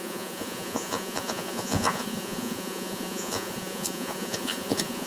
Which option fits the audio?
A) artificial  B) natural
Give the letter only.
A